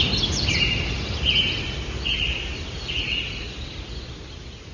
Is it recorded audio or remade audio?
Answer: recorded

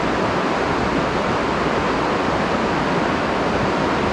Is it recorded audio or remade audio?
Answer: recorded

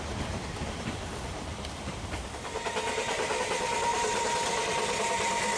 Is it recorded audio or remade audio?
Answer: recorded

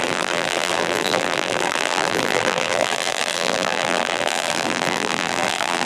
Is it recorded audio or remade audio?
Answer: remade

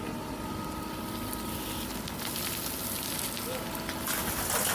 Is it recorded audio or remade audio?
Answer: recorded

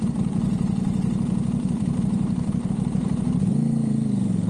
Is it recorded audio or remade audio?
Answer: remade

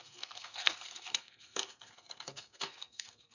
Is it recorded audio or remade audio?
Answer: remade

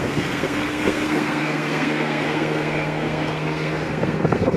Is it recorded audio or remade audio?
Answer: remade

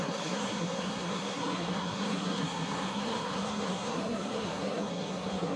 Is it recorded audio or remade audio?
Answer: remade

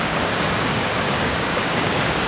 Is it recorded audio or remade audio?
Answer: remade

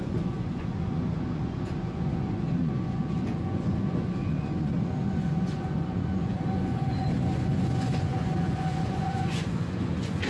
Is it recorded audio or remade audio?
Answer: remade